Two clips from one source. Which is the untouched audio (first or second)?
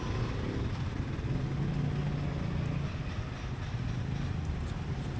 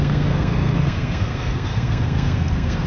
first